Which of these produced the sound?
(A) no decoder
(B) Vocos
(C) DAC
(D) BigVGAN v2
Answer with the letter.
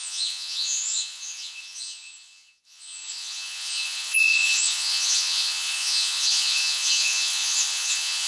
B